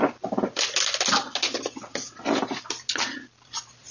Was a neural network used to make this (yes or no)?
no